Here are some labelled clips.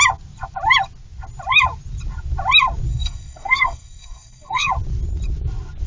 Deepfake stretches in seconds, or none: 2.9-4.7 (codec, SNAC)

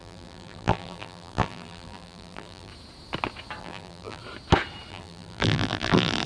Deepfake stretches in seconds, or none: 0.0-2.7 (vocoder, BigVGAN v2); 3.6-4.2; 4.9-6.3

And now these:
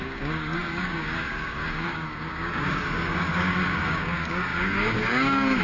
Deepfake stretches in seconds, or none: 0.0-5.6 (codec, DAC)

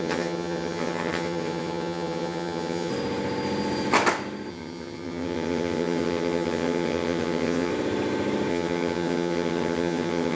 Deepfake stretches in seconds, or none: 0.0-2.9 (vocoder, HiFi-GAN); 4.5-7.7; 8.5-10.4